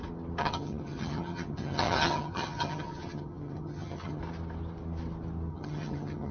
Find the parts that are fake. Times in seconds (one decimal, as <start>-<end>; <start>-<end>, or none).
0.4-4.2; 5.5-6.3